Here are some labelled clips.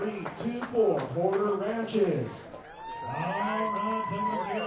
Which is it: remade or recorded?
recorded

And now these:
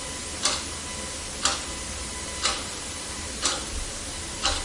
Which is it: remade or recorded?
recorded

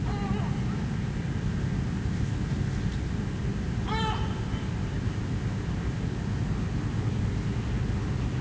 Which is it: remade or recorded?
recorded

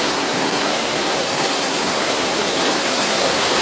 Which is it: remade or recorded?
remade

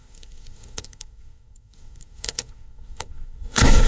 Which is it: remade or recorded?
remade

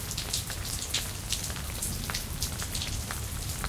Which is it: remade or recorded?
recorded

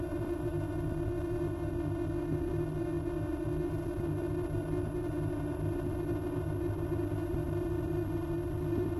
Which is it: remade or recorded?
recorded